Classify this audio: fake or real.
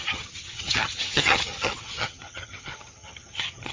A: fake